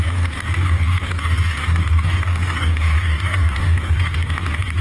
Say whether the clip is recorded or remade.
remade